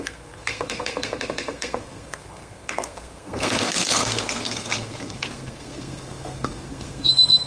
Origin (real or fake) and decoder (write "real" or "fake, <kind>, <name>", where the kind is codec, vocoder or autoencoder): fake, codec, SNAC